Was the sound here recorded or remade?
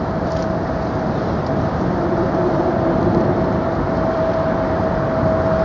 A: remade